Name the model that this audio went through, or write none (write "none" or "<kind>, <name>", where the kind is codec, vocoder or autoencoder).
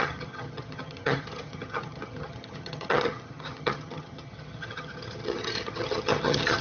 vocoder, HiFi-GAN